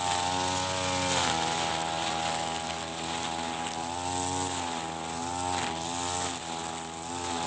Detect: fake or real real